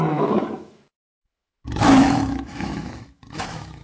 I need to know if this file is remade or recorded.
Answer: remade